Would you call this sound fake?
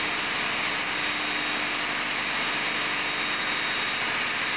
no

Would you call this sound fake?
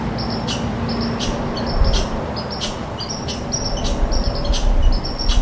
no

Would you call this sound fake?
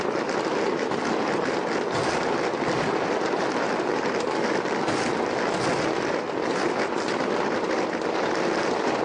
no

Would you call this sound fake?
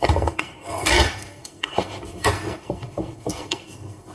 yes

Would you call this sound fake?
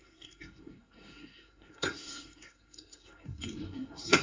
yes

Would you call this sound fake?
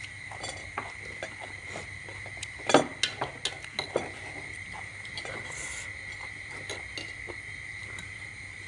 no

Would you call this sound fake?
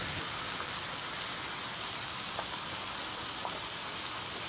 no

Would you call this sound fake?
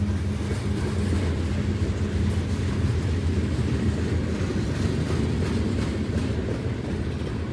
no